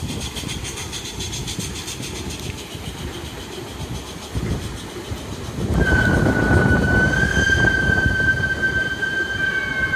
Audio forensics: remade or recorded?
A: recorded